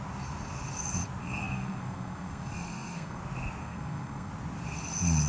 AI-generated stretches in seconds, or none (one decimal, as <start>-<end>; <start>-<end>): 1.2-3.2; 3.6-4.3